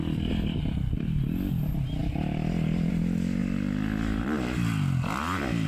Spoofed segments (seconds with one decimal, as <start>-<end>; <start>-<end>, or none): none